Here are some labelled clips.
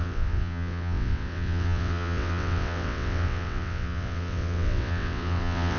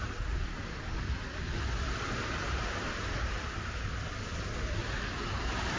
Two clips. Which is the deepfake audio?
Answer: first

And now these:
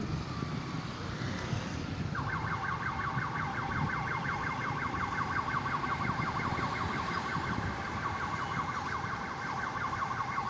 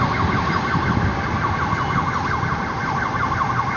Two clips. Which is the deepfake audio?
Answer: first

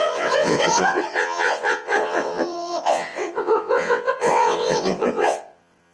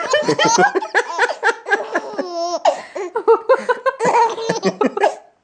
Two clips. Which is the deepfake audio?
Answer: first